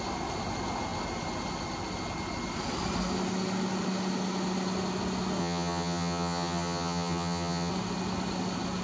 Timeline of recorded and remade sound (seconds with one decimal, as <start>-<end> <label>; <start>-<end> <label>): 0.0-5.4 recorded; 5.4-7.7 remade; 7.7-8.8 recorded